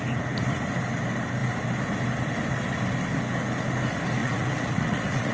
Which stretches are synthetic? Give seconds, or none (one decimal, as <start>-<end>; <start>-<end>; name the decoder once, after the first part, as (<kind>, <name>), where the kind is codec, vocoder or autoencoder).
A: 4.2-5.3 (vocoder, Vocos)